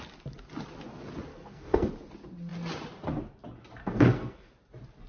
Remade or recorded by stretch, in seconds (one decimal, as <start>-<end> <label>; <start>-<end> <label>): 0.0-1.3 recorded; 1.3-1.9 remade; 1.9-3.8 recorded; 3.8-4.5 remade; 4.5-5.1 recorded